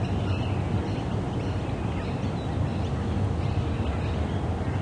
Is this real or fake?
real